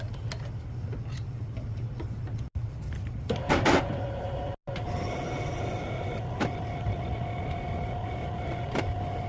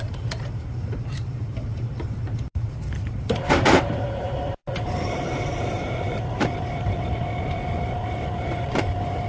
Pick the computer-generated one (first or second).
second